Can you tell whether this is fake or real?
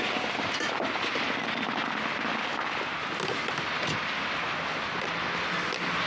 real